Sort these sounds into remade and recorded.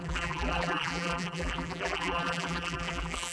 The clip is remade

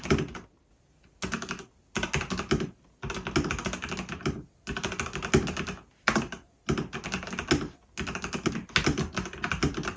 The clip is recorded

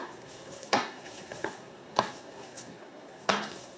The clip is remade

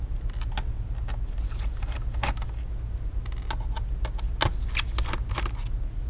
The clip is recorded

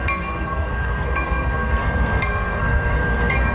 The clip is remade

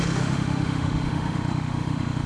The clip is remade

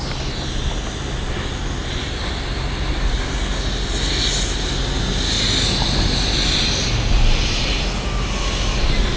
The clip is recorded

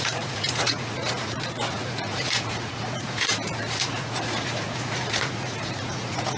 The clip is remade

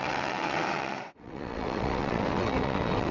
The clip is remade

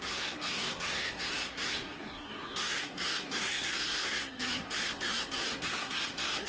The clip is remade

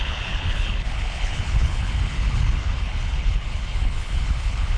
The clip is remade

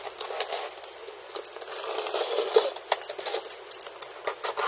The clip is recorded